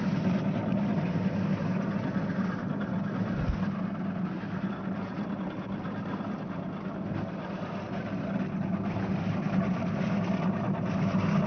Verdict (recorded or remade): recorded